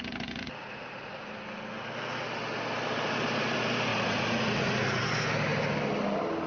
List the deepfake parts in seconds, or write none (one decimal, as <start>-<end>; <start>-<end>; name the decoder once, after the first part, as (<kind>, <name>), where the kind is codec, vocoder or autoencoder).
0.4-1.1 (vocoder, Vocos); 3.9-5.0